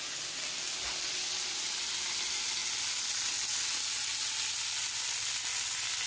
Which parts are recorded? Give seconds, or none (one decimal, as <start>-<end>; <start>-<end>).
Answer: 0.0-6.1